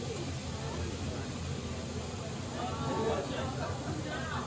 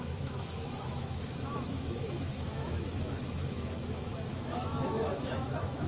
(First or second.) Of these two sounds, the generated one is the second